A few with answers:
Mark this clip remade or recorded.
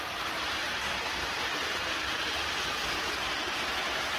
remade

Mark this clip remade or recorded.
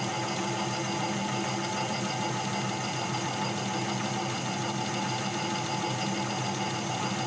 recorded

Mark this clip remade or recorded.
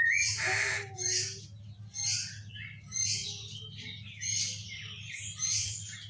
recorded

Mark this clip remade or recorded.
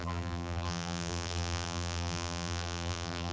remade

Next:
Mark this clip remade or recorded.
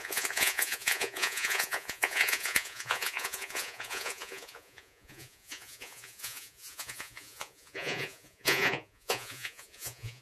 remade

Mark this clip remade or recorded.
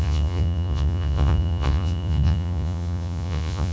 remade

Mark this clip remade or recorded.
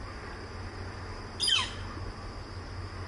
recorded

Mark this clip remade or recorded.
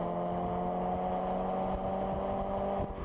recorded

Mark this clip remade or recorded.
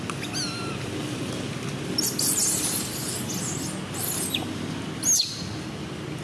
recorded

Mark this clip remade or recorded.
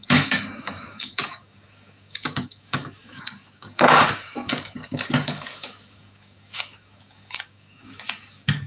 remade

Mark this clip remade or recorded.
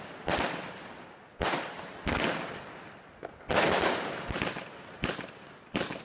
recorded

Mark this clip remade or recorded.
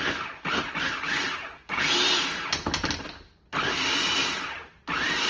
recorded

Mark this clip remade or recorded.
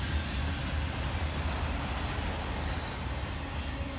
recorded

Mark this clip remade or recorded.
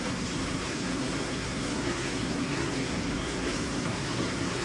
remade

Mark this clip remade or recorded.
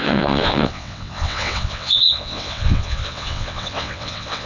remade